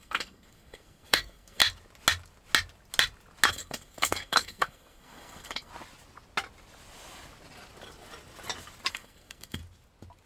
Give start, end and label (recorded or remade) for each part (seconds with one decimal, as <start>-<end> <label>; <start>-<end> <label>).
0.0-1.6 remade; 1.6-3.5 recorded; 3.5-5.7 remade; 5.7-8.9 recorded; 8.9-9.6 remade; 9.6-10.3 recorded